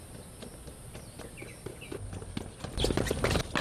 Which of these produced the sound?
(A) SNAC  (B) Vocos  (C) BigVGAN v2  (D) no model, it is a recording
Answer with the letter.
D